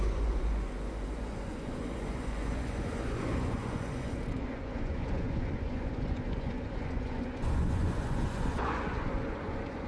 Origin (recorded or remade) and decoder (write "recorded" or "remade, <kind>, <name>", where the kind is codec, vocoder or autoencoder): remade, vocoder, Vocos